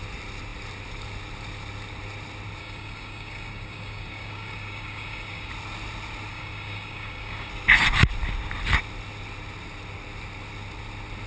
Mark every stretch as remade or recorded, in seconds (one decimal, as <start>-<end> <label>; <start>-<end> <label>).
0.0-2.6 recorded; 2.6-5.5 remade; 5.5-6.3 recorded; 6.3-7.5 remade; 7.5-11.3 recorded